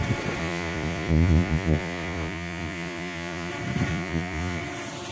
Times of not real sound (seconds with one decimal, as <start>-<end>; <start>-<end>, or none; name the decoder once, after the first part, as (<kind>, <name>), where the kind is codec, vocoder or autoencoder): 0.4-3.5 (vocoder, Vocos); 3.9-4.6